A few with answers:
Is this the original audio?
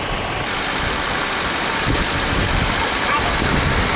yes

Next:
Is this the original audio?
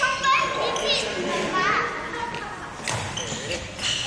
yes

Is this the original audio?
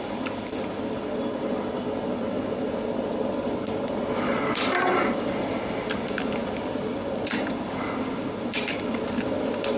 yes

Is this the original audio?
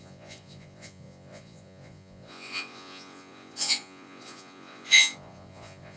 no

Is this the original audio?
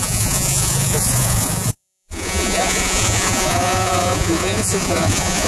no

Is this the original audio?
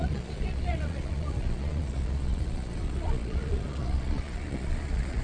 no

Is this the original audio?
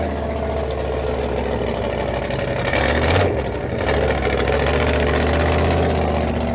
yes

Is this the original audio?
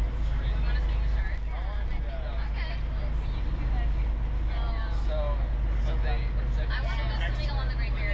yes